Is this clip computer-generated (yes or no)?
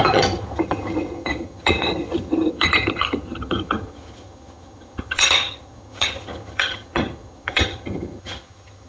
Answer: yes